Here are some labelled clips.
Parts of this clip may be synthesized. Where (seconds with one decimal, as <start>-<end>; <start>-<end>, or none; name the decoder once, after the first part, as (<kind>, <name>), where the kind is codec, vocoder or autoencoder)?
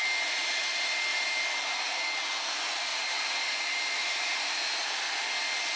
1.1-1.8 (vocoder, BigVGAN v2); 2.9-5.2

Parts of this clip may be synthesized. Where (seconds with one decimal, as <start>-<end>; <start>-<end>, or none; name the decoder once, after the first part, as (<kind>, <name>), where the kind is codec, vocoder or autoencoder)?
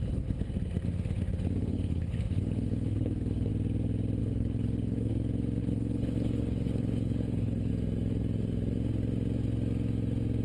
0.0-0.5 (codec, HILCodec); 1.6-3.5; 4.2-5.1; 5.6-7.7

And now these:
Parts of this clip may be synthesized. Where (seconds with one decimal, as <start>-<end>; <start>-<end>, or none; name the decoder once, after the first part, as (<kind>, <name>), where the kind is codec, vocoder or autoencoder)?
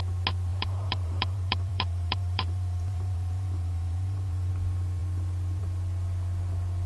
0.5-4.5 (vocoder, BigVGAN v2)